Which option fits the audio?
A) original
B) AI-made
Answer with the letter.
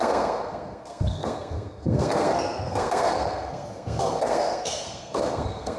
B